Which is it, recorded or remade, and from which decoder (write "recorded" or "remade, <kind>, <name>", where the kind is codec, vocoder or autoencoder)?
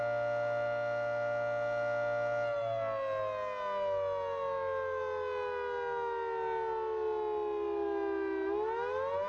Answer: recorded